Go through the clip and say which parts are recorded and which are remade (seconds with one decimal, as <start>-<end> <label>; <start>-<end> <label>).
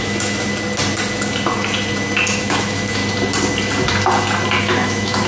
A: 0.0-0.5 remade; 0.5-2.4 recorded; 2.4-3.0 remade; 3.0-4.6 recorded; 4.6-5.3 remade